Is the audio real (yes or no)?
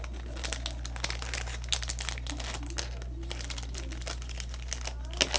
yes